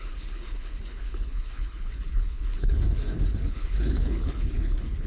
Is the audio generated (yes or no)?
yes